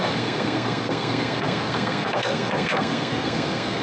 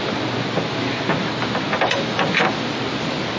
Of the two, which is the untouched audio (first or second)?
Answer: second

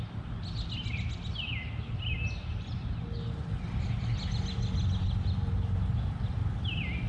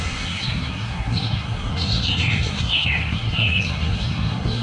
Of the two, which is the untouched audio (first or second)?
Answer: first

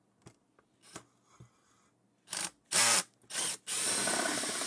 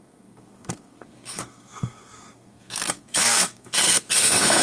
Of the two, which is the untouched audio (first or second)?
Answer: first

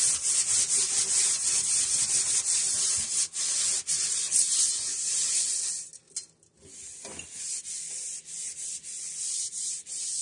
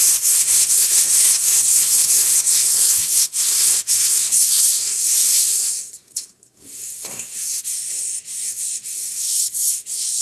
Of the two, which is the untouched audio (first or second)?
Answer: first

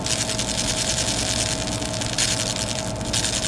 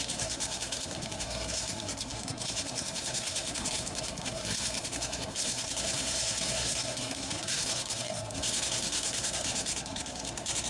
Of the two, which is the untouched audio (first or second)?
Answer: first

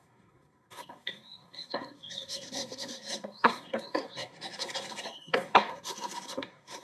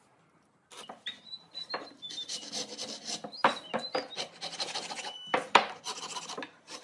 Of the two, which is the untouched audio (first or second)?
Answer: second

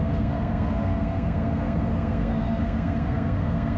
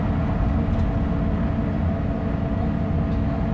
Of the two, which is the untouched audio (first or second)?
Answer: second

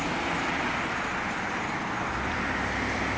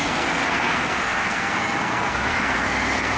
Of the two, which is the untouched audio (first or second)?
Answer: first